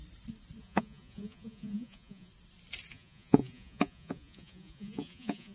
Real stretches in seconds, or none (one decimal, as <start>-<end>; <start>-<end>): 0.0-0.6; 2.3-2.9